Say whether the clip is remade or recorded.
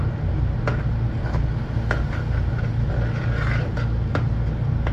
recorded